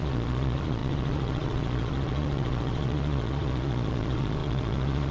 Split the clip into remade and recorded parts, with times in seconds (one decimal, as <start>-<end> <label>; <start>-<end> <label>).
0.0-5.1 remade